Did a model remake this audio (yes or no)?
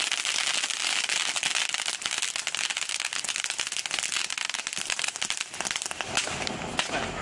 no